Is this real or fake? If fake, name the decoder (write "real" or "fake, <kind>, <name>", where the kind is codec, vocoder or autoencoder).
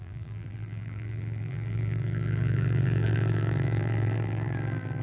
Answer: fake, vocoder, BigVGAN v2